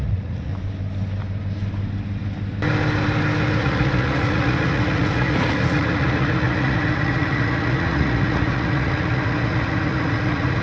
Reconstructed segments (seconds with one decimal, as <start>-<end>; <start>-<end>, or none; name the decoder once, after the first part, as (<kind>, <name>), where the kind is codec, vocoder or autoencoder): 0.0-0.5 (vocoder, Vocos); 3.6-10.6